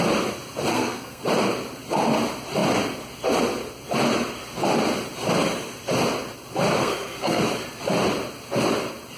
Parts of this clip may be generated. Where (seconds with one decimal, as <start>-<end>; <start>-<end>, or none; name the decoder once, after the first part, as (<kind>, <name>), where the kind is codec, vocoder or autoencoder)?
0.7-1.2 (codec, SNAC); 6.8-7.4